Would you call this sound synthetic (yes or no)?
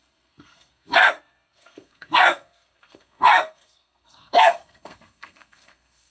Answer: yes